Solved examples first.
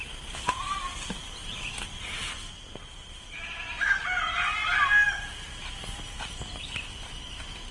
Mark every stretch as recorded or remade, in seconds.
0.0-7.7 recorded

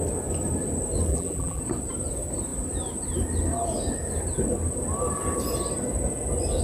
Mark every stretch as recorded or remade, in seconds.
0.0-1.1 recorded; 1.1-1.6 remade; 1.6-6.6 recorded

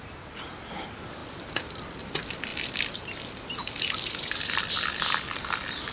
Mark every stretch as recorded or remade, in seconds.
0.0-5.9 recorded